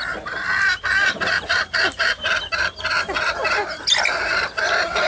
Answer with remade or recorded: recorded